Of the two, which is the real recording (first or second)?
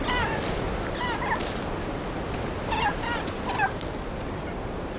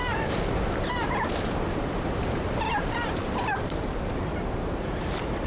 first